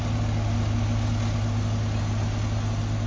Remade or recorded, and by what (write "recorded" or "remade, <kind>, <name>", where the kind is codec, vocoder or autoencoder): recorded